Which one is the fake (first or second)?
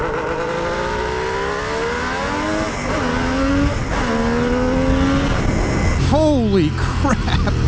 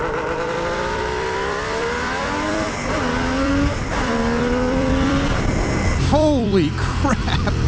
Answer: second